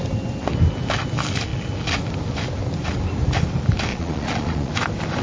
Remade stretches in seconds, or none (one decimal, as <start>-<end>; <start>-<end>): 3.9-4.7